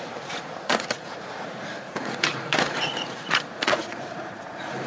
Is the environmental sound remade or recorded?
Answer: remade